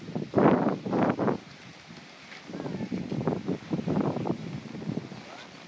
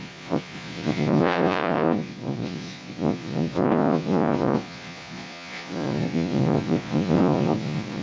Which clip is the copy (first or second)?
second